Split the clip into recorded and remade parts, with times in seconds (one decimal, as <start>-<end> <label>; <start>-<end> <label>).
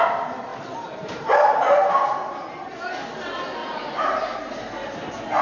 0.0-0.5 recorded; 0.5-1.9 remade; 1.9-3.6 recorded; 3.6-4.5 remade; 4.5-5.4 recorded